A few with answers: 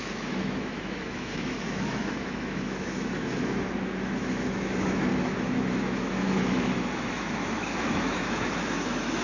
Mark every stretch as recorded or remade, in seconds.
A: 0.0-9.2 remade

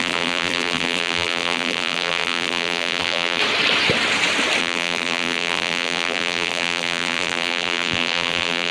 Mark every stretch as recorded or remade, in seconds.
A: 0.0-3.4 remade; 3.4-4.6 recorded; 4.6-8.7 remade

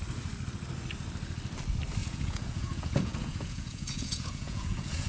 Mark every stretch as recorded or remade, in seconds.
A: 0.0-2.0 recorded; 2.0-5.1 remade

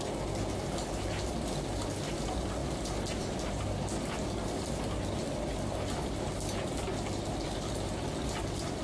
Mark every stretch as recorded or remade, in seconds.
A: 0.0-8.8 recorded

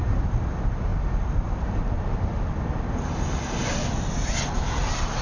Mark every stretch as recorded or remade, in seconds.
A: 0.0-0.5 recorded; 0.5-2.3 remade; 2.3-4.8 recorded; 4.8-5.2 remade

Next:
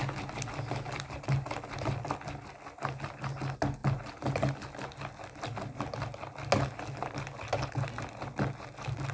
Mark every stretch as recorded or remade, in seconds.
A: 0.0-9.1 recorded

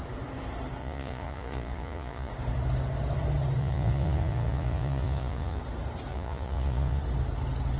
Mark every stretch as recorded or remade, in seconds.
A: 0.0-0.8 recorded; 0.8-2.3 remade; 2.3-3.6 recorded; 3.6-5.6 remade; 5.6-6.1 recorded; 6.1-7.0 remade; 7.0-7.8 recorded

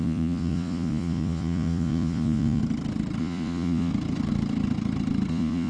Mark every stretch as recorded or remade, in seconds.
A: 0.0-2.6 remade; 2.6-3.2 recorded; 3.2-3.9 remade; 3.9-5.3 recorded; 5.3-5.7 remade